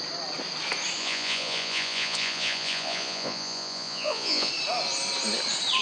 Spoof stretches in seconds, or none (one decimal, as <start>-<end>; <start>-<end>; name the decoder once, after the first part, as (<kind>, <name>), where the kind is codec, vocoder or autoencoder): 1.0-4.5 (vocoder, Vocos)